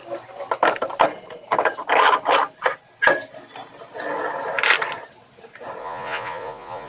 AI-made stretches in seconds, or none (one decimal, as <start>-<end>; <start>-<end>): 5.8-6.9

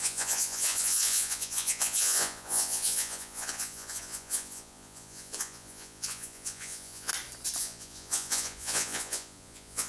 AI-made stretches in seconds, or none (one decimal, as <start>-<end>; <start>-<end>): 0.0-7.1; 7.6-9.9

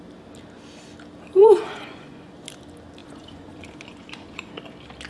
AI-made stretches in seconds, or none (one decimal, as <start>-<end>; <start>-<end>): 1.4-2.3; 3.0-4.5

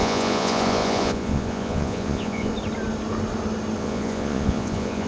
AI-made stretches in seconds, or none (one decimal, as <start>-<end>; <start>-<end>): 0.0-2.5; 3.8-5.1

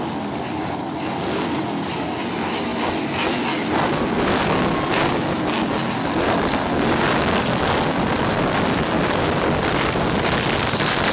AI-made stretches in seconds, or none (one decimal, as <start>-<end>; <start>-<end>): none

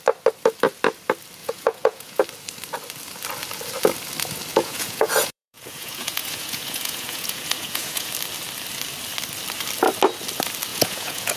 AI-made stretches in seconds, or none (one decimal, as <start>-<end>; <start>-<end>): 1.4-2.2; 4.5-8.1; 10.7-11.4